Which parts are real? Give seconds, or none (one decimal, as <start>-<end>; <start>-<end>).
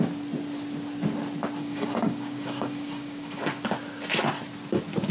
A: 0.0-1.6; 3.4-5.1